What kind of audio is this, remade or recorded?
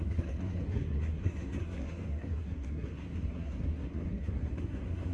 remade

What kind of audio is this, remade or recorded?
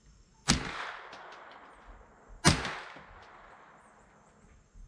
recorded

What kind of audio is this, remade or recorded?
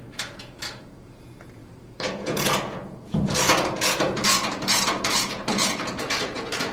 remade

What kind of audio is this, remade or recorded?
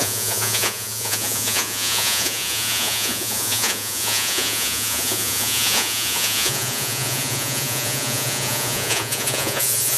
remade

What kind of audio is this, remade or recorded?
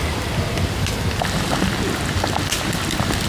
recorded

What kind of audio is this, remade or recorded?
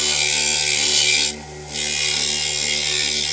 recorded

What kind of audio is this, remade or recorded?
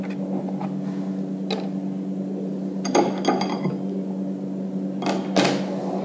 recorded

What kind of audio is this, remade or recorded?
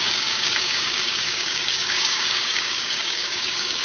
remade